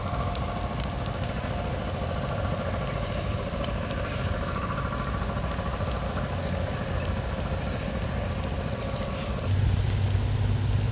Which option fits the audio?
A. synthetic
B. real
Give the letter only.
B